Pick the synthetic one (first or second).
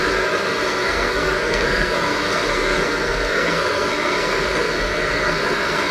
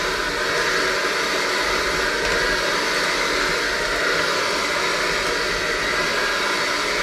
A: first